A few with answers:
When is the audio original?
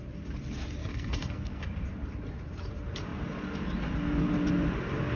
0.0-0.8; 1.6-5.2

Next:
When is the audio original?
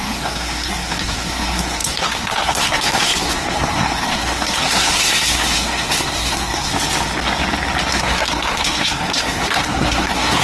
6.7-7.9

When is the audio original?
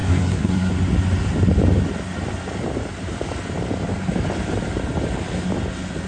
0.7-6.1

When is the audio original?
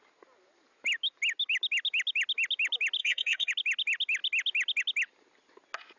0.0-3.0; 3.5-6.0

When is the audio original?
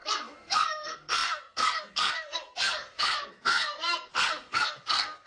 none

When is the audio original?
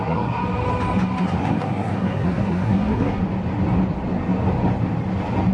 0.4-1.2; 3.2-5.5